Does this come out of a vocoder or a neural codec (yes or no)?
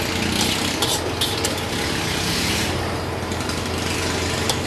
no